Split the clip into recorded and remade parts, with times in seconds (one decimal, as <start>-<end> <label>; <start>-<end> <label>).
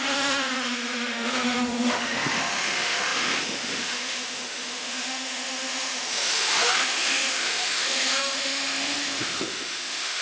0.0-10.2 remade